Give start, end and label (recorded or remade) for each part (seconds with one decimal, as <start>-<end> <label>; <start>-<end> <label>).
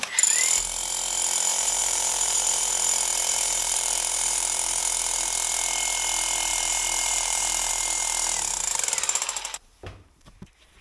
0.0-1.5 recorded; 1.5-2.7 remade; 2.7-3.1 recorded; 3.1-4.8 remade; 4.8-6.5 recorded; 6.5-7.7 remade; 7.7-10.8 recorded